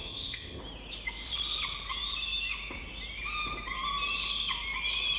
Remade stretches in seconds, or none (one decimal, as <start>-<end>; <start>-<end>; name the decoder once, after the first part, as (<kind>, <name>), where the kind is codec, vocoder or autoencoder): 0.0-0.6 (codec, ZipCodec)